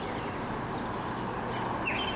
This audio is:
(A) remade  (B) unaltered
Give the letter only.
B